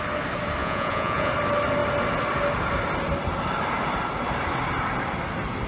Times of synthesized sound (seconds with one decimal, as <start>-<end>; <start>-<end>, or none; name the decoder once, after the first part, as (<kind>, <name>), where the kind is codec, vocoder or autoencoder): 0.6-1.3 (vocoder, Vocos)

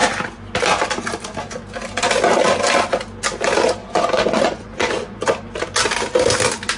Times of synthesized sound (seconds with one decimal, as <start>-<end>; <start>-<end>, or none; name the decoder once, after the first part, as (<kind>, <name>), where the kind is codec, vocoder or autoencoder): 3.8-5.2 (vocoder, Vocos)